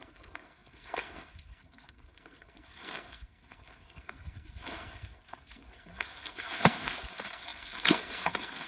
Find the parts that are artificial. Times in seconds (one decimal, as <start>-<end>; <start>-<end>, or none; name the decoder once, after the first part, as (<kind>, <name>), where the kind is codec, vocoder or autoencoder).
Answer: 0.0-8.7 (codec, SNAC)